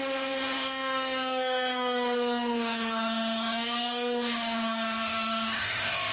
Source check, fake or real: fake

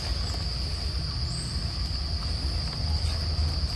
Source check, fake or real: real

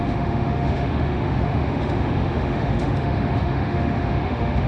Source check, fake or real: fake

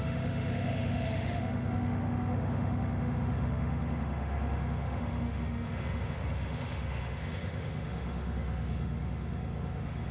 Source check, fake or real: fake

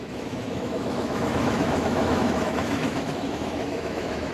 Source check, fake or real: fake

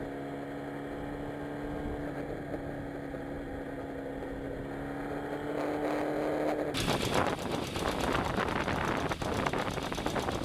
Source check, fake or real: real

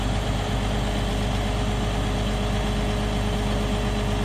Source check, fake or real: real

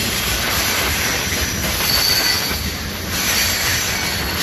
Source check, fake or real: real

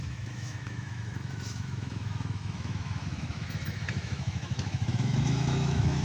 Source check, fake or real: fake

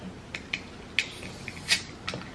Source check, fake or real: real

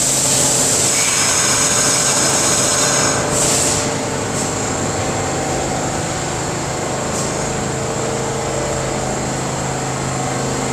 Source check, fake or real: real